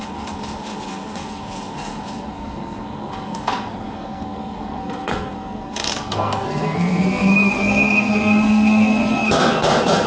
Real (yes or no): no